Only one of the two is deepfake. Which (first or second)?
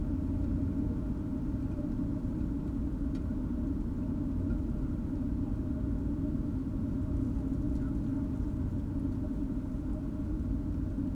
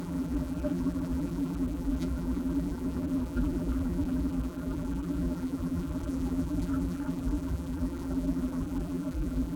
second